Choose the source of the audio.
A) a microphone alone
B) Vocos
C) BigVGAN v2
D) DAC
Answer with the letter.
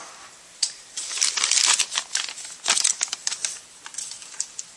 A